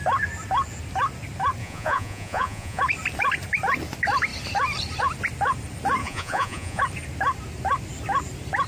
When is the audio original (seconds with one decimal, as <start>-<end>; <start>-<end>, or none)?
0.0-1.6; 2.8-6.0; 6.8-8.7